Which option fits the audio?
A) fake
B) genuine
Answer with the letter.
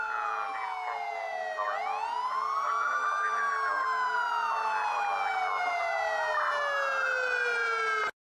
B